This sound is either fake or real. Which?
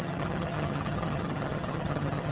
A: fake